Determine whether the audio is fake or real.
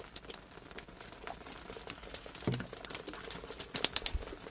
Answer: real